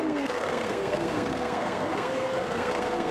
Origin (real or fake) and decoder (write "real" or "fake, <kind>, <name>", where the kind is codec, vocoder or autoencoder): fake, codec, SNAC